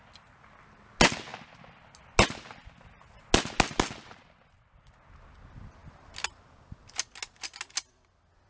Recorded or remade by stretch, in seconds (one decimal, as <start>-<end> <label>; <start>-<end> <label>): 0.0-8.5 recorded